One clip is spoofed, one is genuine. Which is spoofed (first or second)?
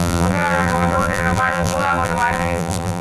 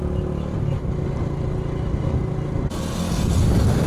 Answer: first